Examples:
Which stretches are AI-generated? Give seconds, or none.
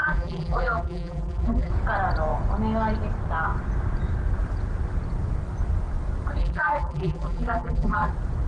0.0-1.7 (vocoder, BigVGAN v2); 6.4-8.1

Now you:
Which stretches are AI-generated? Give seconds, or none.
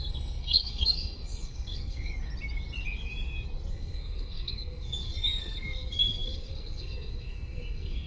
0.0-2.1 (codec, SNAC); 3.7-8.1